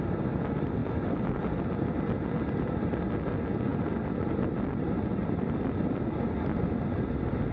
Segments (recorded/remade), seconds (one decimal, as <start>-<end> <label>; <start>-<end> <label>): 0.0-7.5 recorded

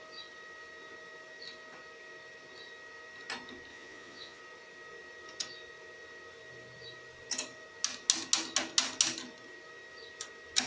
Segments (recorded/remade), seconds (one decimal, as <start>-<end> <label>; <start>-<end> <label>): 0.0-3.7 recorded; 3.7-4.4 remade; 4.4-10.7 recorded

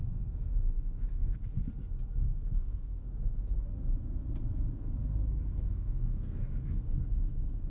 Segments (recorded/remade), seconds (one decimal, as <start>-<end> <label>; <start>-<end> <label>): 0.0-1.4 remade; 1.4-2.2 recorded; 2.2-3.7 remade; 3.7-4.7 recorded; 4.7-7.7 remade

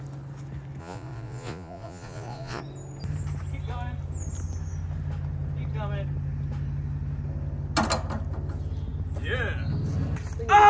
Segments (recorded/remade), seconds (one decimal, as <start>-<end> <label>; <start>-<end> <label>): 0.0-0.8 recorded; 0.8-2.6 remade; 2.6-10.7 recorded

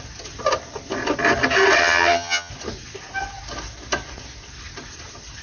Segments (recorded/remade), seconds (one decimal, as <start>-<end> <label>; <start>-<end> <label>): 0.0-1.8 recorded; 1.8-2.5 remade; 2.5-5.4 recorded

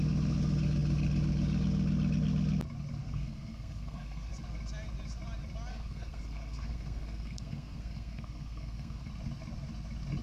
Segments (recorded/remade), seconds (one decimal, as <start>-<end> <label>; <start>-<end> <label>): 0.0-3.0 recorded; 3.0-4.3 remade; 4.3-5.7 recorded; 5.7-9.1 remade; 9.1-10.2 recorded

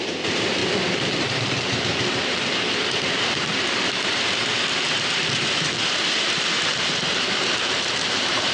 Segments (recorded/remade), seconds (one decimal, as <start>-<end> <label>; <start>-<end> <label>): 0.0-0.6 remade; 0.6-1.2 recorded; 1.2-4.5 remade; 4.5-5.3 recorded; 5.3-8.5 remade